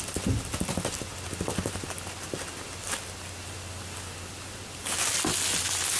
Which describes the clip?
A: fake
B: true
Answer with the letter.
B